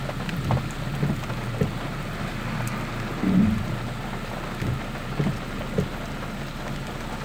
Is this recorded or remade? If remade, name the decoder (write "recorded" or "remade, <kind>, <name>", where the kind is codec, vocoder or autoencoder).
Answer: recorded